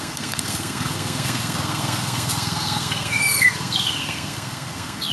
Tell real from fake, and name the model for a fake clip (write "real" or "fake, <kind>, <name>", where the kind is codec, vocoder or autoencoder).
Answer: fake, codec, SNAC